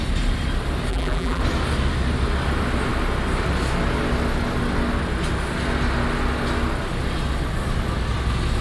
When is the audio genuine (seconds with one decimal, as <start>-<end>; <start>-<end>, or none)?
0.0-0.9; 1.4-8.6